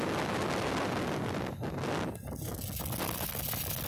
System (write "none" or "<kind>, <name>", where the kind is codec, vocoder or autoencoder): none